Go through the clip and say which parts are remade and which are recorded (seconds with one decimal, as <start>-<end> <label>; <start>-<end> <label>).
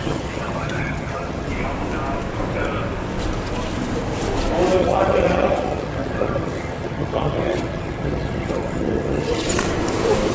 0.0-1.5 remade; 1.5-4.8 recorded; 4.8-9.6 remade; 9.6-10.3 recorded